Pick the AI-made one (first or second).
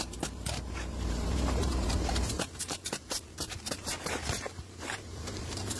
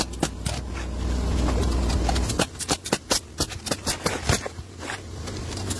first